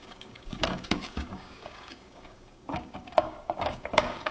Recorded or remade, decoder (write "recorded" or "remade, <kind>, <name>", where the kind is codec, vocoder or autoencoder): remade, codec, DAC